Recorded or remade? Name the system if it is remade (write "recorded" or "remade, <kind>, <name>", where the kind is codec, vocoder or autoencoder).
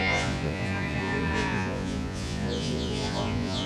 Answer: remade, vocoder, Vocos